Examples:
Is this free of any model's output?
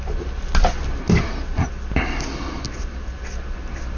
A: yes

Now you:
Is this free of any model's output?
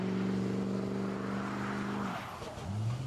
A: yes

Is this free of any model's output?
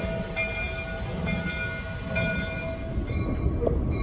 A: yes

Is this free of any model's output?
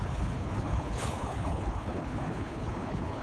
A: no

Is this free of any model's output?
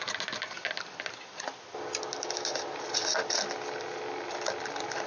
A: yes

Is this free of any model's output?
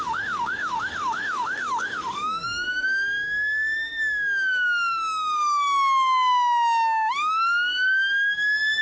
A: no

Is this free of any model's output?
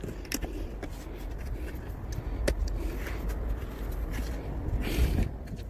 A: yes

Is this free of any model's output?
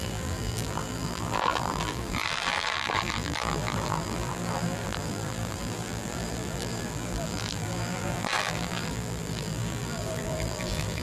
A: no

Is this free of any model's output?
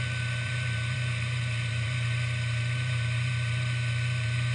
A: no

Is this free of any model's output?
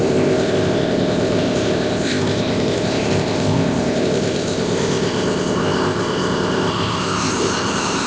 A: no